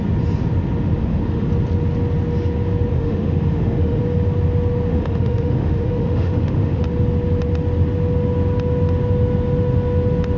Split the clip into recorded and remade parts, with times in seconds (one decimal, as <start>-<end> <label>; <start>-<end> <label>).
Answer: 0.0-1.0 recorded; 1.0-1.5 remade; 1.5-2.9 recorded; 2.9-4.0 remade; 4.0-4.9 recorded; 4.9-6.8 remade; 6.8-10.4 recorded